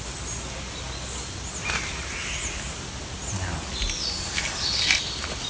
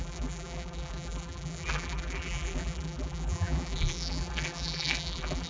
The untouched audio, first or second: first